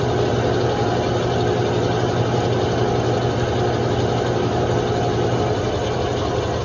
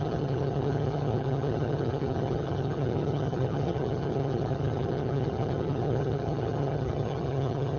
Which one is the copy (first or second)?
second